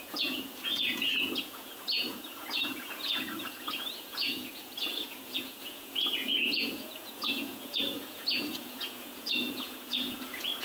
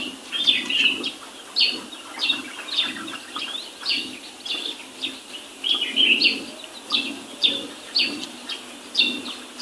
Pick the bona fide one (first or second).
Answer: second